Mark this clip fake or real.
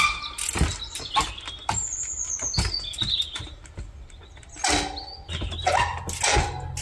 real